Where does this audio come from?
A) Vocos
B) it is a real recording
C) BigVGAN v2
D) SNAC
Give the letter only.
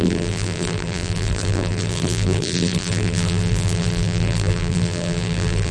C